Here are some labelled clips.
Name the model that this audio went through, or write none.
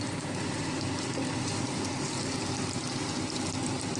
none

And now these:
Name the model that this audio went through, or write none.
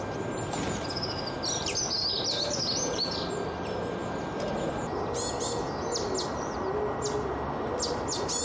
none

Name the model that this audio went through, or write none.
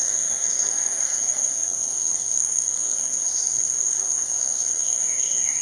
codec, SNAC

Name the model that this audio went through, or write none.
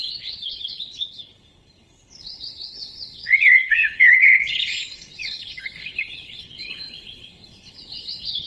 codec, HILCodec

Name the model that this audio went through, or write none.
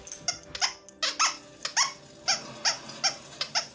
none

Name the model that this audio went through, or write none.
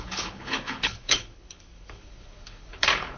codec, HILCodec